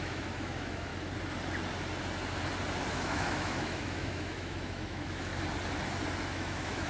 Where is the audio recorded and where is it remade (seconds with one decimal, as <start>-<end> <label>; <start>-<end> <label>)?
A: 0.0-0.9 remade; 0.9-2.9 recorded; 2.9-5.3 remade; 5.3-6.3 recorded; 6.3-6.9 remade